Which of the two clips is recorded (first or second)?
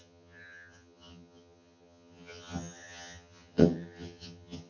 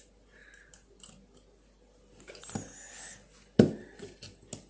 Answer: second